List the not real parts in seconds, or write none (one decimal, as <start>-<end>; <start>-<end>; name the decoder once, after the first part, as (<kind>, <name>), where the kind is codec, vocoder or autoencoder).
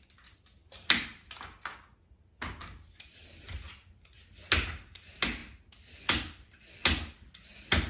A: none